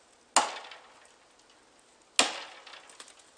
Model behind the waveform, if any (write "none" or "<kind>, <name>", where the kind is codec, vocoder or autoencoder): none